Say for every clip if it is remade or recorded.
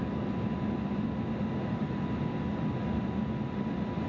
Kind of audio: recorded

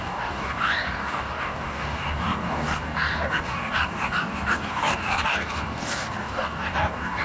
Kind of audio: remade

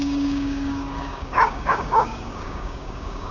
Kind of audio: remade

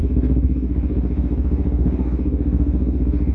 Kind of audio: remade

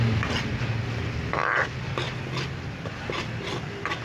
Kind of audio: recorded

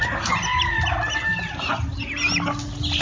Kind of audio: recorded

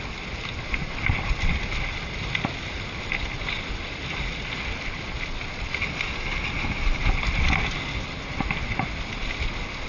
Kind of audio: recorded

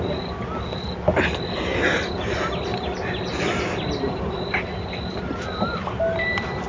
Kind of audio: recorded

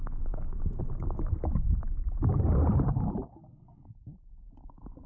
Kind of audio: recorded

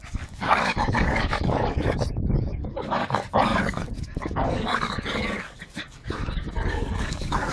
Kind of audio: remade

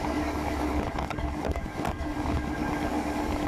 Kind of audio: remade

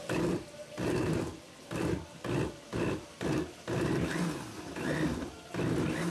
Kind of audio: recorded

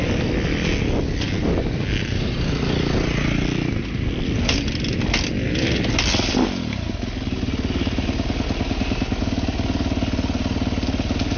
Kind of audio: recorded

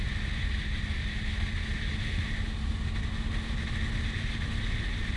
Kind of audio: recorded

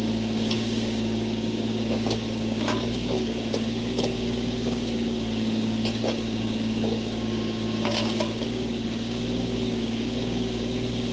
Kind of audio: remade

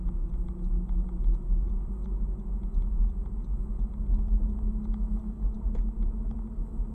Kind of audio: recorded